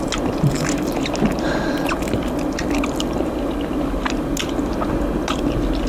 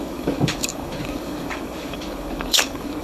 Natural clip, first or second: first